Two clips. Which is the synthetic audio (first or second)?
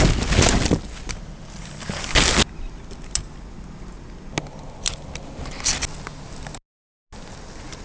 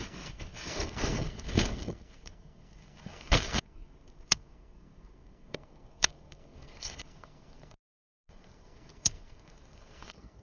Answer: second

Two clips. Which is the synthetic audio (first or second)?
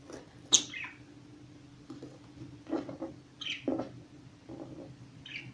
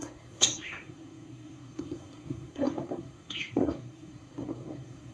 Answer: second